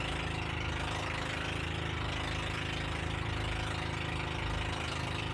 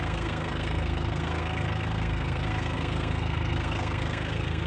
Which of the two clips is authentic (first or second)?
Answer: first